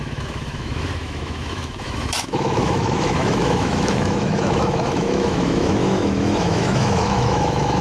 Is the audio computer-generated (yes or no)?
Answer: yes